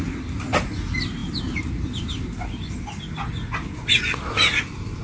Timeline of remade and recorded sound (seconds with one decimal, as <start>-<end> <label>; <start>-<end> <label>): 0.0-5.0 recorded